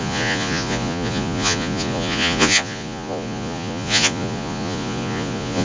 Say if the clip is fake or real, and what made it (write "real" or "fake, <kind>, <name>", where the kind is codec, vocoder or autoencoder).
fake, vocoder, Vocos